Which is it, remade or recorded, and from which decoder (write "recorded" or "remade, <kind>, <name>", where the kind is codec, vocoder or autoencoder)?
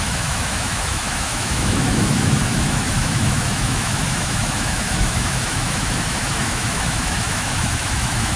remade, autoencoder, DAC-VAE